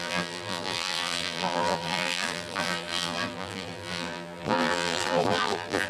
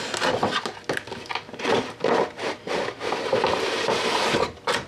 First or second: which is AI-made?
first